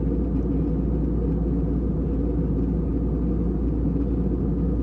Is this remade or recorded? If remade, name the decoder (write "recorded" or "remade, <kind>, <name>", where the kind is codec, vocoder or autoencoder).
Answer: recorded